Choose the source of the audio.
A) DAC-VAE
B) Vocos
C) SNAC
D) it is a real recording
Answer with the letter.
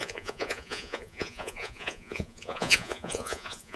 B